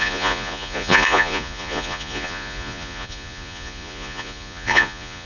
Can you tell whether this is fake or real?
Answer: fake